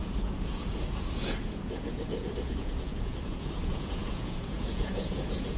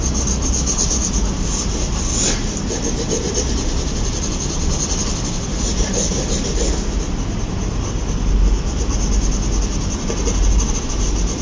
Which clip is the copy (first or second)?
first